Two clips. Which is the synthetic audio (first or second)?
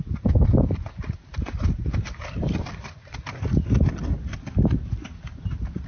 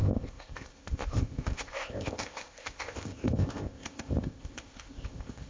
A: second